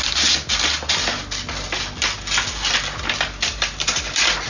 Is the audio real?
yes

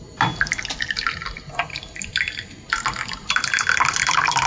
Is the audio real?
yes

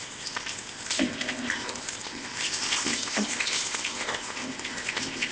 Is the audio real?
no